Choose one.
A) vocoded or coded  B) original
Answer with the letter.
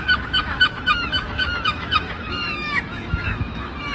A